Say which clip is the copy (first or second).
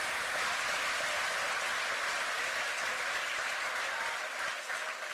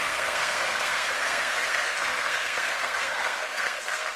second